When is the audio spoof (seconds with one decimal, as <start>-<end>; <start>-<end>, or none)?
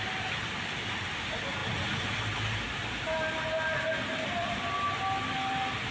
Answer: none